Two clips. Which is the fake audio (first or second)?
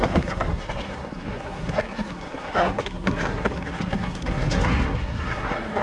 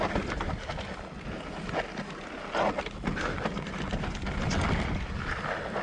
first